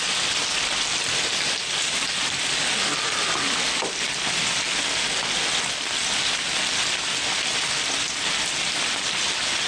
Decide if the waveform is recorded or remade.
recorded